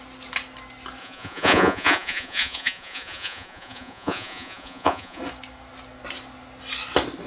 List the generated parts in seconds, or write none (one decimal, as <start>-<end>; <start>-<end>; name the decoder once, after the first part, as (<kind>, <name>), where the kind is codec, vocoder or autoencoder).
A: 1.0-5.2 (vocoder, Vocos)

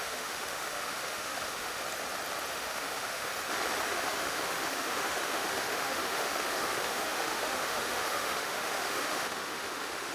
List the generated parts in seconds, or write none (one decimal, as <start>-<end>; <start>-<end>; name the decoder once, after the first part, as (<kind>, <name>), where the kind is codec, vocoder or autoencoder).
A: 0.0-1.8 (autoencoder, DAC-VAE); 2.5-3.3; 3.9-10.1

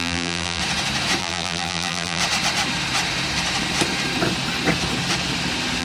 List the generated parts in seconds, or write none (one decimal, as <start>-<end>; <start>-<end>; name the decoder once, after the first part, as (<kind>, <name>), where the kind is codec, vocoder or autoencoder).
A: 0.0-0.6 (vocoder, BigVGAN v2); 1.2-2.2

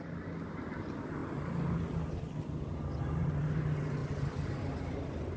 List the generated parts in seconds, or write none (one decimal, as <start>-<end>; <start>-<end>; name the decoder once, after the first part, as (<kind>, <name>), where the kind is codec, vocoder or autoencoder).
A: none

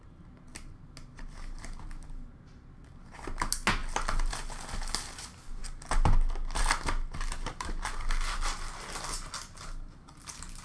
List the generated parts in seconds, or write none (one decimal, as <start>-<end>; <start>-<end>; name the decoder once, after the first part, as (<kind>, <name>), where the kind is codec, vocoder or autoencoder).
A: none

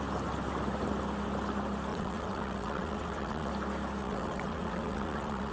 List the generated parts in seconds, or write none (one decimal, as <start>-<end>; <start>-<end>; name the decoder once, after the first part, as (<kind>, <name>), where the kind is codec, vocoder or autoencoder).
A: 1.9-3.5 (vocoder, WaveNeXt); 4.0-5.5

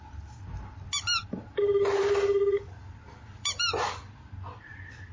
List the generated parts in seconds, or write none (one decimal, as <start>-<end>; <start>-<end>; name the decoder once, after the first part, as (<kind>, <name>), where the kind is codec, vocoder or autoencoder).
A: 1.2-4.3 (vocoder, BigVGAN v2)

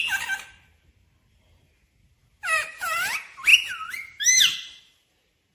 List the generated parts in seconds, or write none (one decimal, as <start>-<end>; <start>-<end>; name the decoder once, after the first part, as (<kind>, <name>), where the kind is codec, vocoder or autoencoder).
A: none